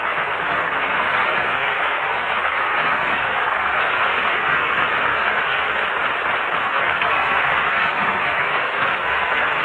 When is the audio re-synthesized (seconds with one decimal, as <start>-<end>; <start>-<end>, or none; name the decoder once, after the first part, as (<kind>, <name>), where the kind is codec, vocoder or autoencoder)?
0.0-5.8 (codec, SNAC); 6.6-9.6